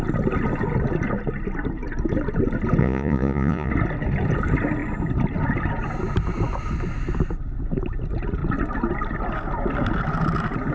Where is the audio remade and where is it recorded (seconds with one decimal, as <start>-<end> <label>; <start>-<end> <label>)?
0.0-2.8 recorded; 2.8-3.7 remade; 3.7-10.7 recorded